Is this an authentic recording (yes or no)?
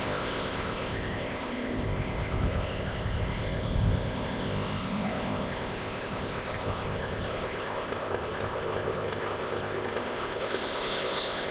no